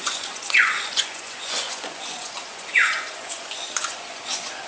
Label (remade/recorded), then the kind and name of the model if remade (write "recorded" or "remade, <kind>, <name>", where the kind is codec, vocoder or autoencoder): remade, vocoder, Vocos